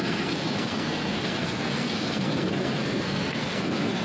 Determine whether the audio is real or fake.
fake